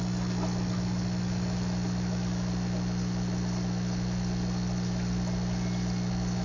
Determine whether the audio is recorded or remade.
recorded